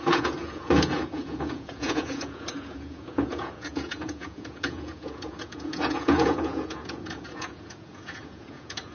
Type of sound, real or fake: fake